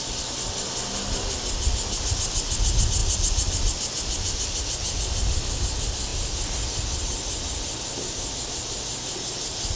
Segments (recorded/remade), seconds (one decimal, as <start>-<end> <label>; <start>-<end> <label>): 0.0-9.8 recorded